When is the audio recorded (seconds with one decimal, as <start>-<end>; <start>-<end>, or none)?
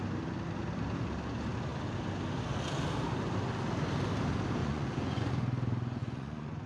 0.0-4.6; 5.3-6.0